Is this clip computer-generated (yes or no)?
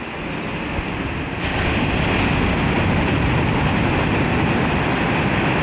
no